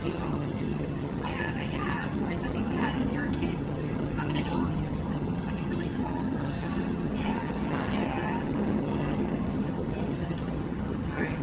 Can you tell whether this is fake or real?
fake